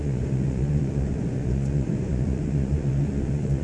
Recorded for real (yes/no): no